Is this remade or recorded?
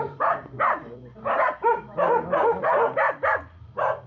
recorded